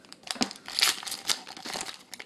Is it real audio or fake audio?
real